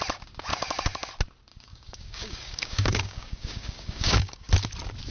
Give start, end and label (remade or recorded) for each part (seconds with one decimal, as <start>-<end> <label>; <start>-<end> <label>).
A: 0.0-0.5 recorded; 0.5-1.1 remade; 1.1-1.5 recorded; 1.5-4.5 remade; 4.5-5.1 recorded